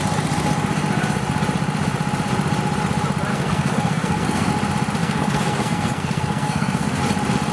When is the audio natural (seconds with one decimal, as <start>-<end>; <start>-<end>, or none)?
0.0-3.3; 4.5-5.0; 7.0-7.5